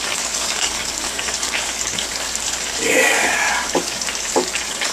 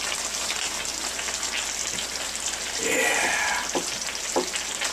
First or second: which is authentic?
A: second